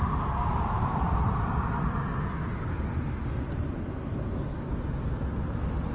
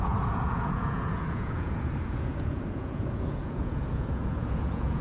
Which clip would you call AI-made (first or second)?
second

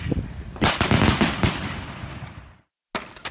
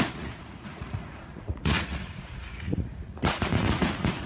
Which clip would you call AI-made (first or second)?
second